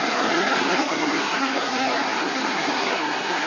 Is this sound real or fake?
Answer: fake